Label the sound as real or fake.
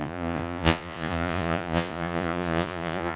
fake